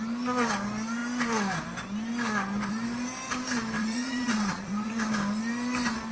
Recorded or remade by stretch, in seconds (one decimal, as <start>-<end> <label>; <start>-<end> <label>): 0.0-3.8 recorded; 3.8-4.9 remade; 4.9-6.1 recorded